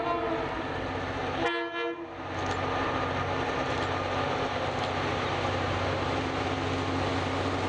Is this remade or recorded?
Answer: recorded